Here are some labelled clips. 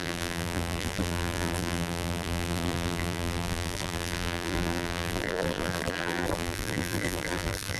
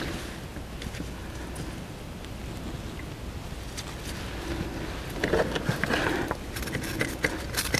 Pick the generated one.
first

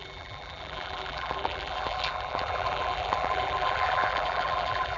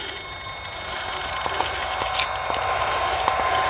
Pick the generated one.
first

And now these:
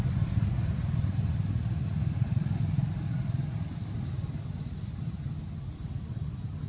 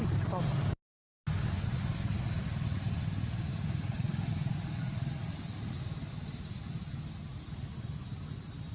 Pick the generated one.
first